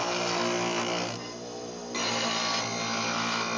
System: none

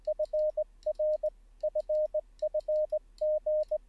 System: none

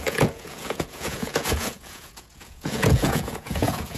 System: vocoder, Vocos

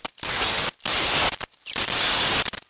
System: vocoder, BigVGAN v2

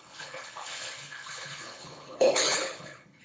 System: codec, HILCodec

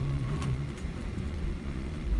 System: vocoder, Vocos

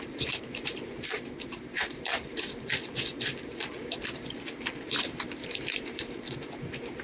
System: vocoder, BigVGAN v2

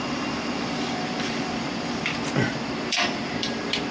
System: vocoder, BigVGAN v2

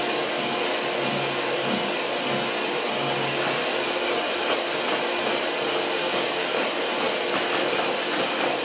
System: none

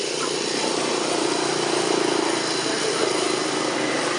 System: none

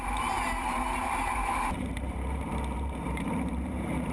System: vocoder, BigVGAN v2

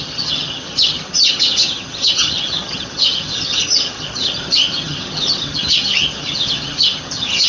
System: vocoder, HiFi-GAN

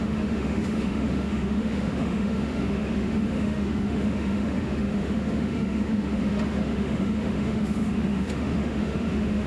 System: autoencoder, DAC-VAE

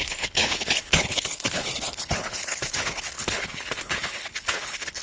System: codec, HILCodec